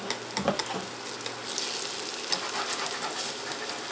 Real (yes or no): yes